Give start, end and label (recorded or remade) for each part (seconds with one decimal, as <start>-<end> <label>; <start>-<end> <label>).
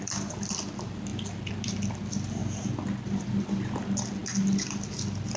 0.0-1.1 remade; 1.1-1.7 recorded; 1.7-2.4 remade; 2.4-3.3 recorded; 3.3-4.2 remade; 4.2-5.0 recorded; 5.0-5.4 remade